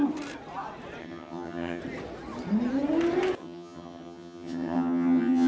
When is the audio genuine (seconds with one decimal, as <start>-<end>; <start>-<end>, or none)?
0.0-1.0; 1.8-3.4

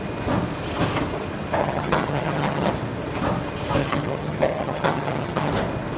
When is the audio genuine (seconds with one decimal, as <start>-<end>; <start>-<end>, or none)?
0.0-1.6; 2.7-3.8; 5.5-6.0

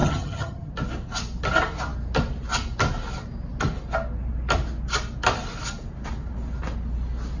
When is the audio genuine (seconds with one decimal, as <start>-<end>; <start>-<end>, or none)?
0.7-7.4